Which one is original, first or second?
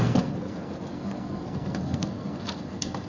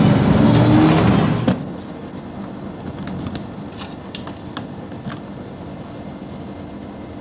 second